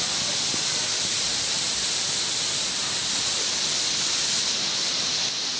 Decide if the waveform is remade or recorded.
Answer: recorded